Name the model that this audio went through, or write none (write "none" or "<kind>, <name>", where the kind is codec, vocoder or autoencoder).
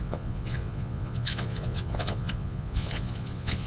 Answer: vocoder, Vocos